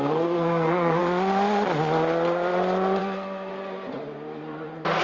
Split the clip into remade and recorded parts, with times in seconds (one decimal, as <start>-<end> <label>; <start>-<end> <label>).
0.0-1.0 remade; 1.0-3.0 recorded; 3.0-3.5 remade; 3.5-5.0 recorded